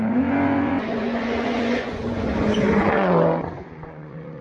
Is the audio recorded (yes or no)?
no